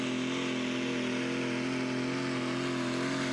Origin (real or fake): real